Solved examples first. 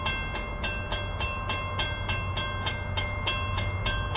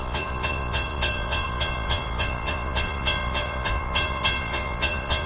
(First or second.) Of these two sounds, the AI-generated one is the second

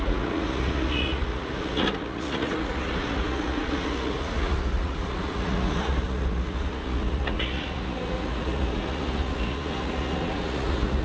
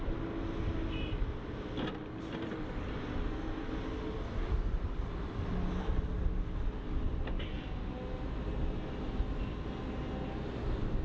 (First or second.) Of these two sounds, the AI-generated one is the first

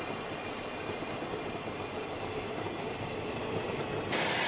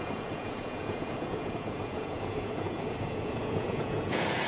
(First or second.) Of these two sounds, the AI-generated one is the second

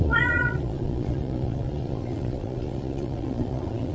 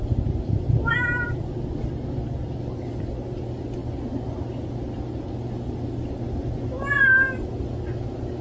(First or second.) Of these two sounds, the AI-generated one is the first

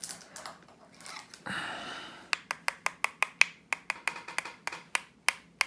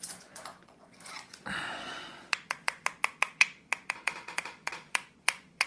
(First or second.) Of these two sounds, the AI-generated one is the second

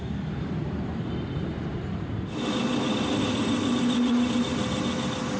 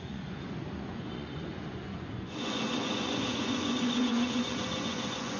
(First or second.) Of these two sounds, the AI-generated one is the second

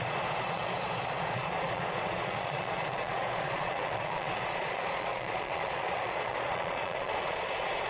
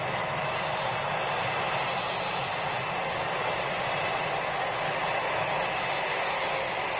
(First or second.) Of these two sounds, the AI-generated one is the first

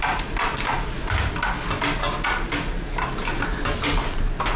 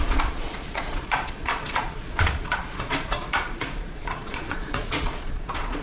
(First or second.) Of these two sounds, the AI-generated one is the second